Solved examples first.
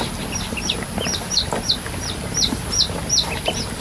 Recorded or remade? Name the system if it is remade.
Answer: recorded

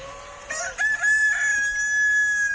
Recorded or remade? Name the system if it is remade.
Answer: recorded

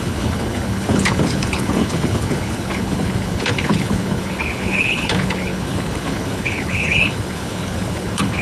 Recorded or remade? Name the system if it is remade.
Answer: remade, codec, HILCodec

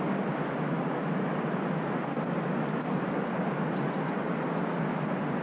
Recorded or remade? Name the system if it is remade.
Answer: recorded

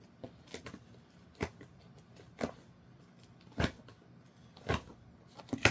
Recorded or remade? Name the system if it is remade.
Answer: recorded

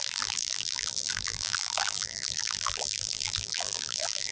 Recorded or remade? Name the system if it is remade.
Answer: remade, vocoder, BigVGAN v2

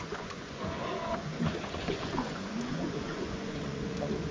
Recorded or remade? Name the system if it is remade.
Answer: remade, vocoder, Vocos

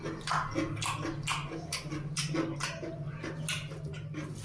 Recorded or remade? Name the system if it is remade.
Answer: recorded